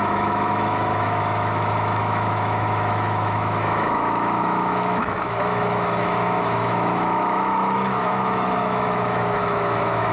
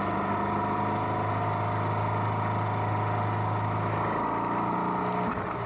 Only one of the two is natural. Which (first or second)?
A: second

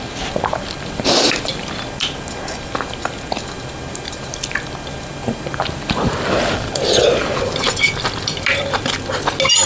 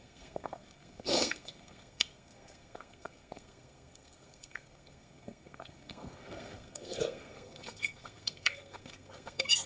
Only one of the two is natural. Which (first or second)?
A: first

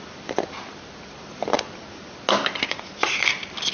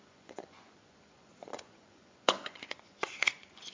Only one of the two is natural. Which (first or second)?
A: first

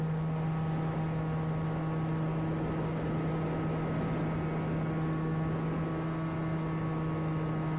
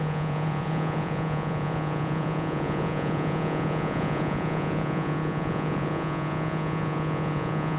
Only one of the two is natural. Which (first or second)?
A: first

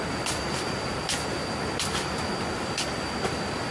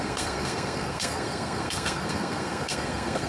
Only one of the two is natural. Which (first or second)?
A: first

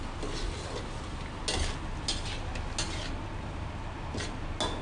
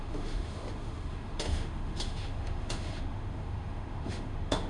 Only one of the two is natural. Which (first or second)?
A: first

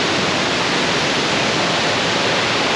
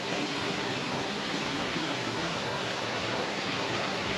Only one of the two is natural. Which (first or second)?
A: first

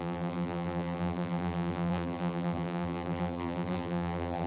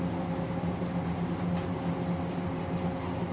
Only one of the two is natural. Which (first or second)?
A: second